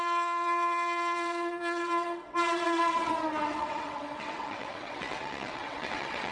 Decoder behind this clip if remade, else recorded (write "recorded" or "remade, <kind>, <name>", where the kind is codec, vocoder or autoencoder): remade, vocoder, WaveNeXt